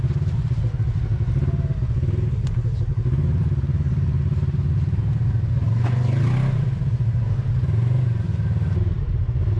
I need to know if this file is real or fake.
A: real